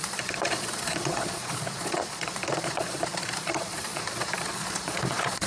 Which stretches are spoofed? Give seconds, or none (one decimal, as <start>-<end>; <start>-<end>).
0.0-5.5